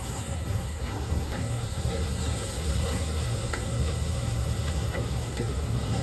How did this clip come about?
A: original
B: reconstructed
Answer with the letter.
B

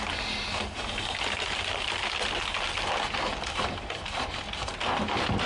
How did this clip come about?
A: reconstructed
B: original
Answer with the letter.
B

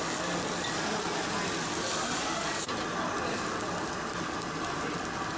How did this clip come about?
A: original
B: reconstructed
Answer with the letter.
A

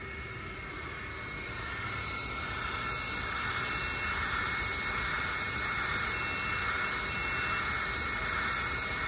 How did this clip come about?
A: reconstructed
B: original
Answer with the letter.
B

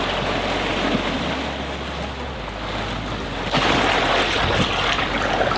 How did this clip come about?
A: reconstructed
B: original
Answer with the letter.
B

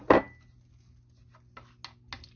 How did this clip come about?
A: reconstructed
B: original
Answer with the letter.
B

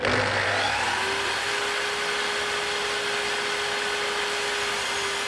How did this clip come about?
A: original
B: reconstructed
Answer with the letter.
A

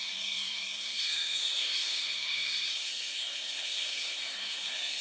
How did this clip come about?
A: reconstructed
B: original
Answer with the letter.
A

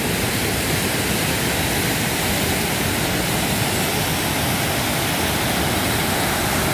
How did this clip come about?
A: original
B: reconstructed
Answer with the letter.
A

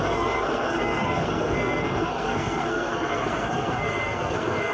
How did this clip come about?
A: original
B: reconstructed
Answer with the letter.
B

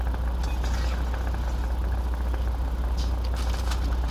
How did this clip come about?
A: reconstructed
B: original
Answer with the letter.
B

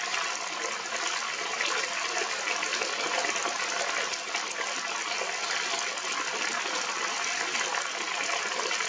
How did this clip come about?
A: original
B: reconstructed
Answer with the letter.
A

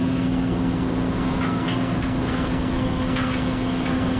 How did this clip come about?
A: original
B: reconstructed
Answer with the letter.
B